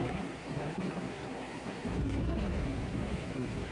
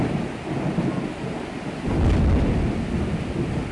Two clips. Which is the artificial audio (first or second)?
first